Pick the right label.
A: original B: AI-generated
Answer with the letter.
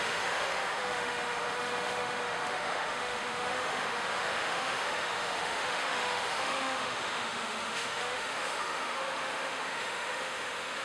B